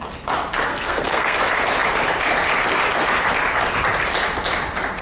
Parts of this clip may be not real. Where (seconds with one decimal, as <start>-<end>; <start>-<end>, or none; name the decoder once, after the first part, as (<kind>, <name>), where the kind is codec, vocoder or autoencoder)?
0.7-1.4 (codec, SNAC)